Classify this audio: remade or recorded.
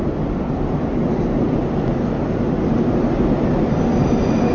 recorded